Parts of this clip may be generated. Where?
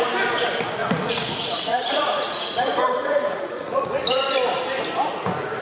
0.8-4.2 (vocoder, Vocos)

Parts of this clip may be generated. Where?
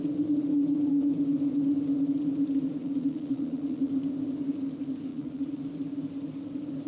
2.8-3.9 (vocoder, Vocos); 5.1-5.6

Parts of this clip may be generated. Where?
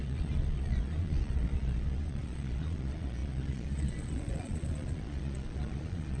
0.0-6.2 (vocoder, Vocos)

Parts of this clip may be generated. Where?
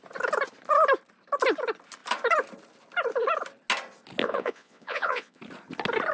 4.2-5.4 (vocoder, Vocos)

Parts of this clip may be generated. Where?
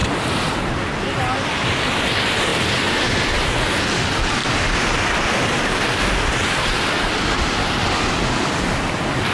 none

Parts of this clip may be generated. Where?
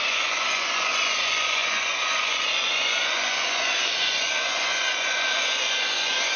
0.0-6.4 (vocoder, Vocos)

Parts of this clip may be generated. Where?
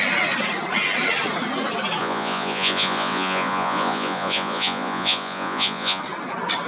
2.0-6.0 (vocoder, Vocos)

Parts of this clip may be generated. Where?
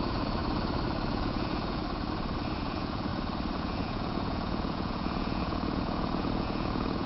0.0-0.4 (vocoder, Vocos); 1.1-1.8; 2.6-3.1; 3.6-7.1